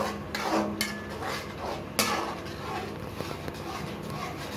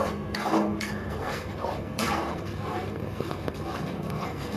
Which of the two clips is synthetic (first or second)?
second